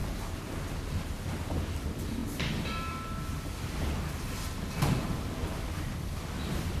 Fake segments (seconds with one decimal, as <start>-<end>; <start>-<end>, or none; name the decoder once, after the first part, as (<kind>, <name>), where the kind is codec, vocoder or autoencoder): 1.7-2.2 (vocoder, BigVGAN v2); 4.8-6.8